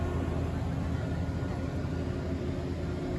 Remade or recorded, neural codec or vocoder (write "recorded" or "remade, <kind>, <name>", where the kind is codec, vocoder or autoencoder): recorded